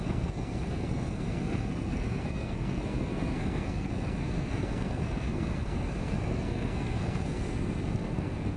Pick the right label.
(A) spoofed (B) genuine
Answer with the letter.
A